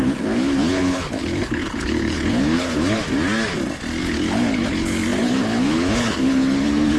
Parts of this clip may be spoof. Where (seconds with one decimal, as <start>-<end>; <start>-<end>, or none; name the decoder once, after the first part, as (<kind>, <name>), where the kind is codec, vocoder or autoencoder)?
0.0-3.0 (codec, HILCodec); 4.0-7.0